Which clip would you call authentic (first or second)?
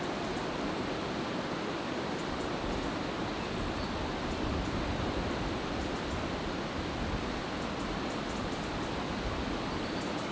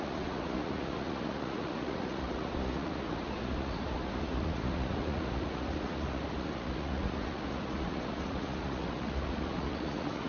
first